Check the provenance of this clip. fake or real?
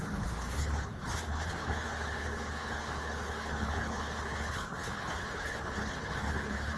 fake